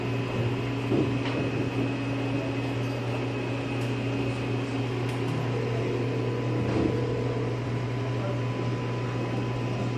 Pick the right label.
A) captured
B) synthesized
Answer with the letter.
A